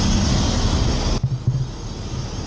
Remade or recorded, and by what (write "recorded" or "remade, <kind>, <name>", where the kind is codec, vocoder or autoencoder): recorded